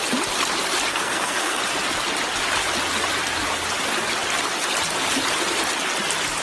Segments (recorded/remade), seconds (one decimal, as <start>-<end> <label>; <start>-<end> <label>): 0.0-0.9 recorded; 0.9-1.6 remade; 1.6-6.4 recorded